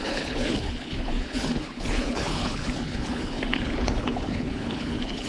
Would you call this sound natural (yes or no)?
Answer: no